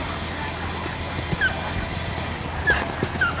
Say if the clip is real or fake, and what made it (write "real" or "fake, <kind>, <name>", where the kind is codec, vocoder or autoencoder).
real